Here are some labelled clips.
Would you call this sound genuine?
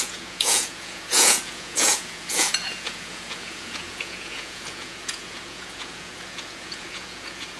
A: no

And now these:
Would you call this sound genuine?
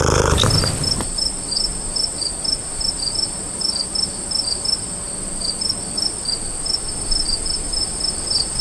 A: yes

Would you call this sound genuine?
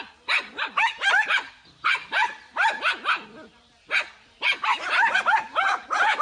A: yes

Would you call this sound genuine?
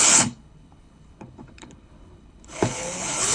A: no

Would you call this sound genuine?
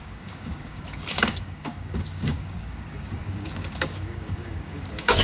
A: no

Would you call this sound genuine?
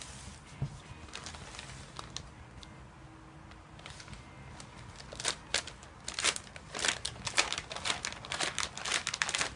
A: yes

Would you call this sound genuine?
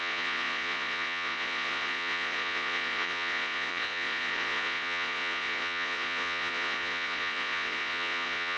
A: no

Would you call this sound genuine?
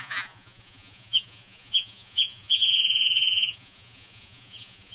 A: no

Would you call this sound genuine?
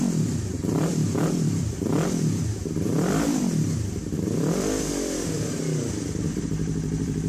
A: no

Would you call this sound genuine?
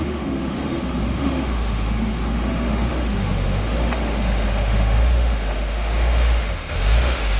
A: no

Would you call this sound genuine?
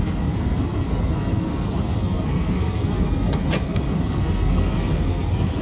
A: no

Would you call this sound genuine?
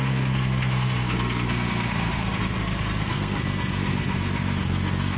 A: no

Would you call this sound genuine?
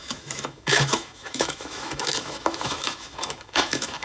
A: no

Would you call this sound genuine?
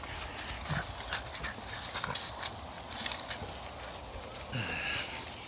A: yes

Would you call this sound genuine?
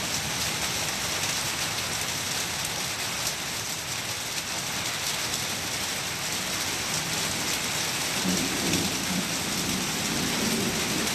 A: yes